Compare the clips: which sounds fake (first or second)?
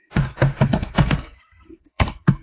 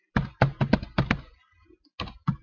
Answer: first